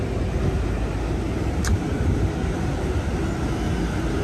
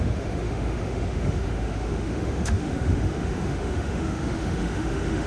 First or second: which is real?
first